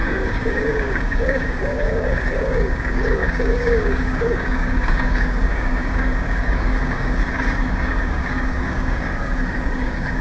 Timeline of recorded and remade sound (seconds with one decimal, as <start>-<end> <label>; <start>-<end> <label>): 0.0-10.2 remade